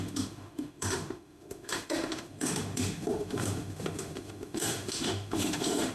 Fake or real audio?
fake